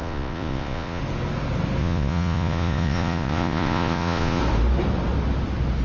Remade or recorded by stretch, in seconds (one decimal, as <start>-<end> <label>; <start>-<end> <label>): 0.0-1.0 remade; 1.0-1.8 recorded; 1.8-4.4 remade; 4.4-5.8 recorded